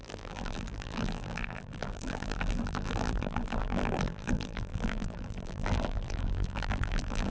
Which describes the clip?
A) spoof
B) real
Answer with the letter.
A